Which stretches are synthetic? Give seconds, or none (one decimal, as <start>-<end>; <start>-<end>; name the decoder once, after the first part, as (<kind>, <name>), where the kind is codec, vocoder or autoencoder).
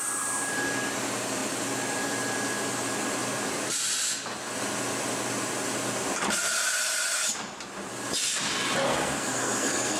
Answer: 8.8-10.0 (codec, SNAC)